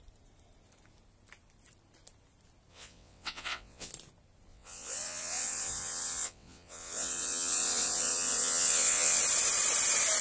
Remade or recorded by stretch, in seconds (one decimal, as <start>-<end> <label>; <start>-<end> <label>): 0.0-2.7 recorded; 2.7-3.9 remade; 3.9-4.5 recorded; 4.5-9.2 remade; 9.2-10.2 recorded

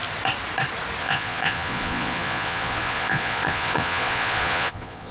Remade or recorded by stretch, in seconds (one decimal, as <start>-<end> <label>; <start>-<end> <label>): 0.0-1.0 recorded; 1.0-5.1 remade

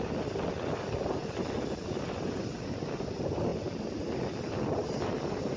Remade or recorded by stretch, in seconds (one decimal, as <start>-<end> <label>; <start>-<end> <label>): 0.0-5.6 recorded